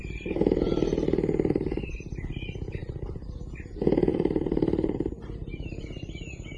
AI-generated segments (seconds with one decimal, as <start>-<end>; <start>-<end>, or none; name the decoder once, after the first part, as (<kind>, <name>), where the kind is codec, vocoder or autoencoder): none